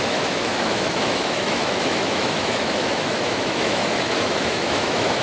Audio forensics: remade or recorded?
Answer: remade